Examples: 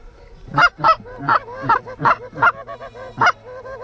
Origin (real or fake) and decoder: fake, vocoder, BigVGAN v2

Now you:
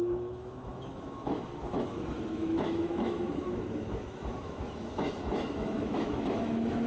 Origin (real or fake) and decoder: fake, autoencoder, DAC-VAE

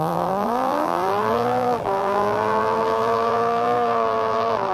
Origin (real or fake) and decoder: fake, vocoder, BigVGAN v2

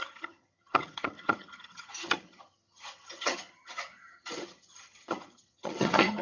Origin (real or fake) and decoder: fake, vocoder, HiFi-GAN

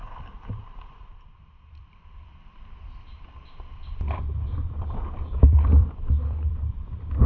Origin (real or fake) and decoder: fake, vocoder, BigVGAN v2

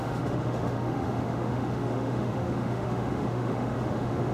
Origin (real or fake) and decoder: fake, autoencoder, DAC-VAE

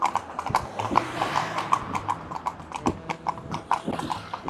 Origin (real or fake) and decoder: real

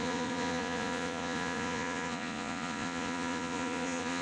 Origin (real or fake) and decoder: fake, vocoder, Vocos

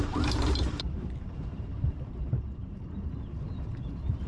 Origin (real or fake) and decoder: fake, vocoder, BigVGAN v2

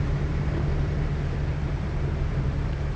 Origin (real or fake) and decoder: fake, vocoder, BigVGAN v2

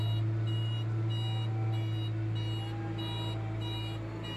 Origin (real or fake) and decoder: real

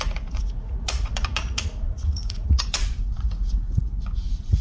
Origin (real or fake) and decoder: fake, vocoder, Vocos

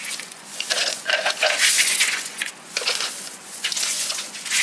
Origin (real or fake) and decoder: fake, vocoder, Vocos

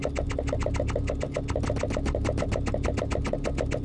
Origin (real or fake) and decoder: real